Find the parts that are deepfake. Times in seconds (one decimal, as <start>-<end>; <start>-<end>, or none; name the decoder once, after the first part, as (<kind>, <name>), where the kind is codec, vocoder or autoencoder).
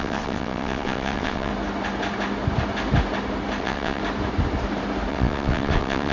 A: 0.0-1.5 (vocoder, WaveNeXt); 3.6-4.0; 5.1-6.1